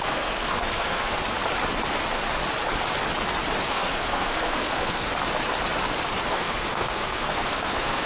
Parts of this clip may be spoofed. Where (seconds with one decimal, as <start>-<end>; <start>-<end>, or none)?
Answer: 0.0-1.2; 3.7-5.1; 6.3-8.1